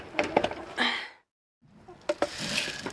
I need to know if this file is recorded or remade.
recorded